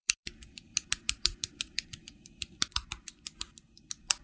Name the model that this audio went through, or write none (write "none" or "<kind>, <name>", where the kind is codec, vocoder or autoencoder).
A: vocoder, BigVGAN v2